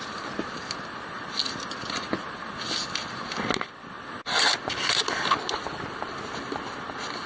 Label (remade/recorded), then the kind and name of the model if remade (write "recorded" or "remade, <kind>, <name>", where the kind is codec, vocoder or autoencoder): recorded